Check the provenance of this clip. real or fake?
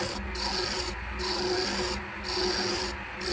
real